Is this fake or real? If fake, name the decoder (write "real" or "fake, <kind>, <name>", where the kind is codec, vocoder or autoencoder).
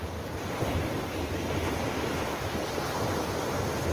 real